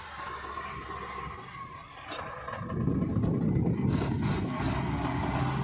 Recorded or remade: recorded